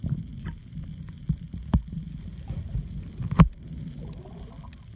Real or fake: real